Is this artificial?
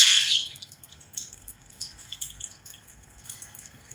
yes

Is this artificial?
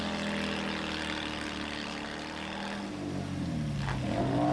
no